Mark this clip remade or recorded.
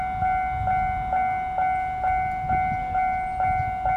recorded